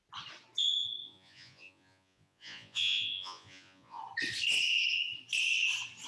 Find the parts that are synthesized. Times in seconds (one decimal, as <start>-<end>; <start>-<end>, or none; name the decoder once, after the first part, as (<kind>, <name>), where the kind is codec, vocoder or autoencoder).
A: 1.0-4.0 (vocoder, Vocos)